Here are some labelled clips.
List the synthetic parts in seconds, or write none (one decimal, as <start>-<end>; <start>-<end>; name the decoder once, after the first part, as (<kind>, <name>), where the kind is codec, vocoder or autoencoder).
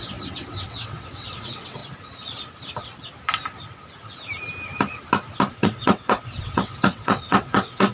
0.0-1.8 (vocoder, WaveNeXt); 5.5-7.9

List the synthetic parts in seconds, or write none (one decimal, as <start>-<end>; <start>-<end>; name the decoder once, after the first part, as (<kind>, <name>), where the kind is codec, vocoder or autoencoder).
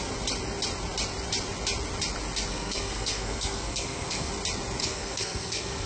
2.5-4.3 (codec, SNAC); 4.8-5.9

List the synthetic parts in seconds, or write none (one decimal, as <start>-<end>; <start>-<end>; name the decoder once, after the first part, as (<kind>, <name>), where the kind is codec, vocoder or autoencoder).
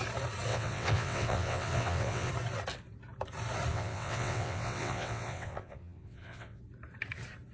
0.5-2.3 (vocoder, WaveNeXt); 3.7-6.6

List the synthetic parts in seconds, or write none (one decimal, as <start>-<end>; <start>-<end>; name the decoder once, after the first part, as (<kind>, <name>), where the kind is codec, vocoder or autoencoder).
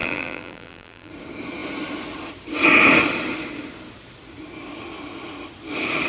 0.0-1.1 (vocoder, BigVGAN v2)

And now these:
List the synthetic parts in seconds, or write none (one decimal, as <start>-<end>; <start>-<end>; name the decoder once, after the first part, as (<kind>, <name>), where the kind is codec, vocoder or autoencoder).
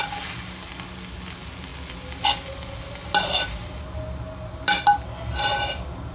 none